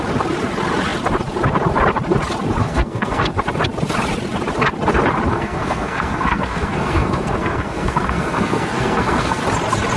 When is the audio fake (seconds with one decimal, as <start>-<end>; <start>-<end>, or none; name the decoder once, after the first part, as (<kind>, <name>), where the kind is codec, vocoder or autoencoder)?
2.6-3.3 (codec, SNAC); 5.3-9.4